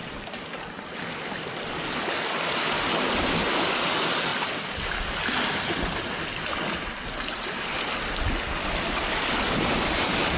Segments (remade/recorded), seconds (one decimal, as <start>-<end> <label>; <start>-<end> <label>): 0.0-10.4 recorded